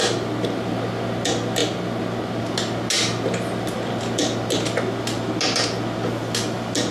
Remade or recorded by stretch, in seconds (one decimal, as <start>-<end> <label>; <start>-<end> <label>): 0.0-6.9 recorded